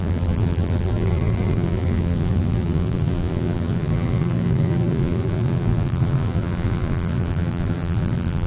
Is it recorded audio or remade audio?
remade